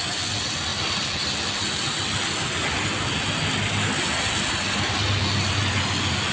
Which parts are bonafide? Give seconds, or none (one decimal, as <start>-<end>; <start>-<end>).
0.0-6.3